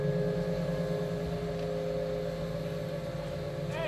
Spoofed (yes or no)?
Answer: no